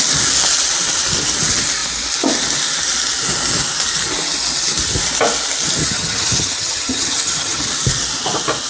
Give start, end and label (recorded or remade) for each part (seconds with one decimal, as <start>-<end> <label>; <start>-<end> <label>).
0.0-5.8 recorded; 5.8-7.6 remade; 7.6-8.7 recorded